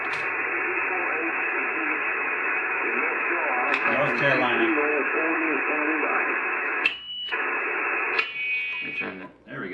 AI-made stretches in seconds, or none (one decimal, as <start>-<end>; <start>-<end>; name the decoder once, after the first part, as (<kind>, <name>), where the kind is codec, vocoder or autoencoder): 1.2-4.3 (autoencoder, DAC-VAE); 4.9-7.8